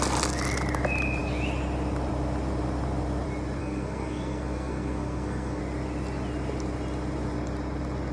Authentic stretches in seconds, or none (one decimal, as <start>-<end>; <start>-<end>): 0.0-3.6; 5.6-8.1